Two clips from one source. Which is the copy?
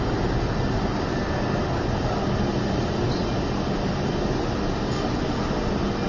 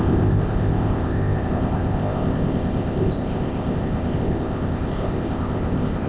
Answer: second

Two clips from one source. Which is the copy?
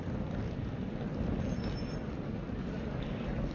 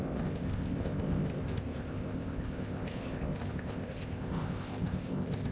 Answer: second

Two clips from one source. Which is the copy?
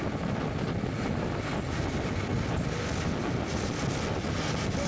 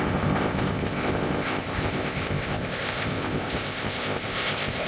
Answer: second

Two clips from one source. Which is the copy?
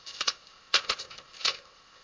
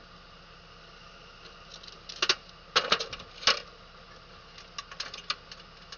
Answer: first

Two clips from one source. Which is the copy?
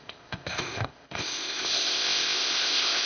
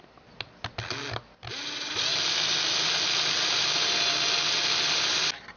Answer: first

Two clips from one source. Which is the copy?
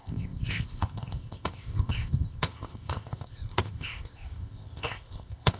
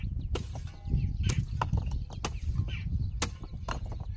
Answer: first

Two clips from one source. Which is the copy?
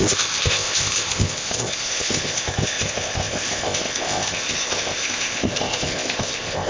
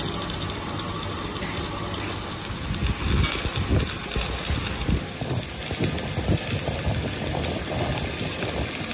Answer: first